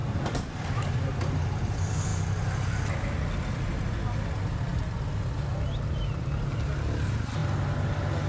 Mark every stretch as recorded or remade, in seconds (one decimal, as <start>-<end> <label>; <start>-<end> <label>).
0.0-8.3 recorded